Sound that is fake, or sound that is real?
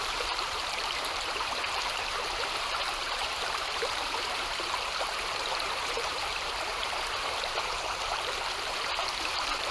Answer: fake